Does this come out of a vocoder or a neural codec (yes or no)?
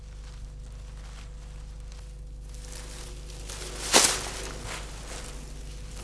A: no